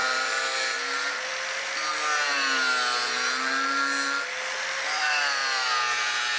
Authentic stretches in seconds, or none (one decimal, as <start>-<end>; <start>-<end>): 1.9-4.7; 5.4-6.4